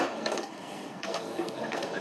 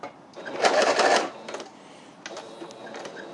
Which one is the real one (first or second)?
second